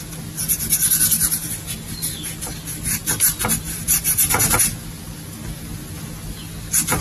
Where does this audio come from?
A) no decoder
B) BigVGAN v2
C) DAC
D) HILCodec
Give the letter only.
A